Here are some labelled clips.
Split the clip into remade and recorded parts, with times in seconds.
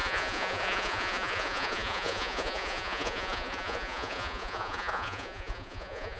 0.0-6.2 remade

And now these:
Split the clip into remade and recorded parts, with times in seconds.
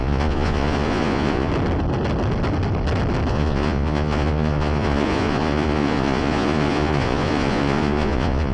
0.0-1.5 remade; 1.5-3.3 recorded; 3.3-8.5 remade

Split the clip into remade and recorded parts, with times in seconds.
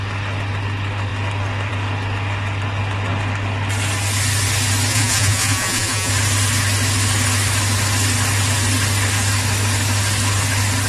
0.0-4.9 recorded; 4.9-6.1 remade; 6.1-10.9 recorded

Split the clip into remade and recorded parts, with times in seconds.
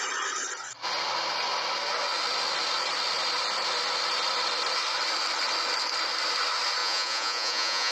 0.0-6.8 recorded; 6.8-7.9 remade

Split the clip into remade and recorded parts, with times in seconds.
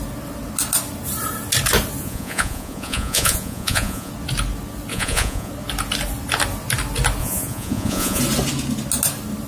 0.0-2.0 recorded; 2.0-4.1 remade; 4.1-4.9 recorded; 4.9-5.5 remade; 5.5-7.2 recorded; 7.2-8.2 remade; 8.2-9.5 recorded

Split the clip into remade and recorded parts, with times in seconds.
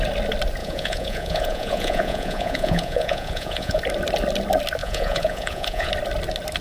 0.0-0.6 recorded; 0.6-3.8 remade; 3.8-4.8 recorded; 4.8-5.9 remade; 5.9-6.6 recorded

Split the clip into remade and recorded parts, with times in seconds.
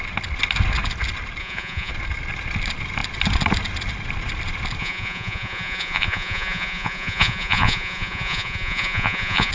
0.0-1.4 recorded; 1.4-1.9 remade; 1.9-4.8 recorded; 4.8-9.5 remade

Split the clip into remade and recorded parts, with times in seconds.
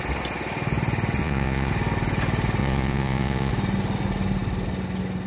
0.0-1.2 recorded; 1.2-1.7 remade; 1.7-2.6 recorded; 2.6-3.5 remade; 3.5-5.3 recorded